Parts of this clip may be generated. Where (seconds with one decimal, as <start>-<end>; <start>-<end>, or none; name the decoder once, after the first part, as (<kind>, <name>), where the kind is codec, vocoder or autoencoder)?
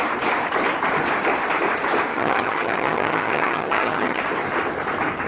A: 2.1-4.2 (vocoder, HiFi-GAN)